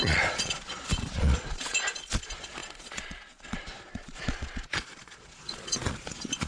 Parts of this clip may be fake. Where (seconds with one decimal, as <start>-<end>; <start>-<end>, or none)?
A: 0.0-6.5